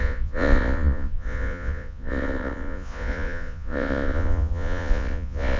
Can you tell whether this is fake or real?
fake